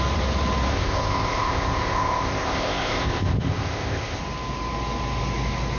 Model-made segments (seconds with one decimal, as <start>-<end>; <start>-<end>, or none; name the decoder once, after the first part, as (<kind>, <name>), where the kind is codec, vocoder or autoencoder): 0.7-4.2 (codec, ZipCodec)